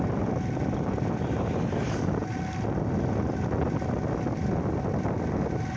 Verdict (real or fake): real